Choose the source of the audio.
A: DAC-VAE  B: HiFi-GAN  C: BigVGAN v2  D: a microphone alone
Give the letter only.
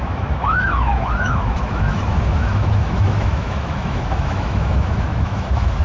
A